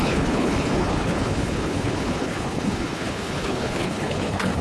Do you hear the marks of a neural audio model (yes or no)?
yes